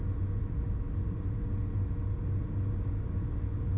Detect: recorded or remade recorded